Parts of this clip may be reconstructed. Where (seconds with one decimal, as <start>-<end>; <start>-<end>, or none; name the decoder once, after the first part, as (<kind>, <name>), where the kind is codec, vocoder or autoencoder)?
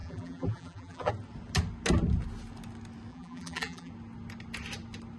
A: 0.0-1.1 (vocoder, BigVGAN v2); 3.1-3.9